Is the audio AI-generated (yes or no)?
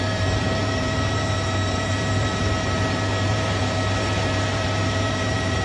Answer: yes